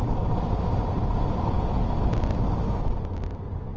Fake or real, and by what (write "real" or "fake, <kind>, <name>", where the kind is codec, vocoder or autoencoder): real